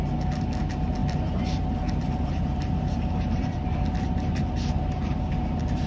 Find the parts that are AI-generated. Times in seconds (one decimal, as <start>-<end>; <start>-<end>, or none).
1.0-4.5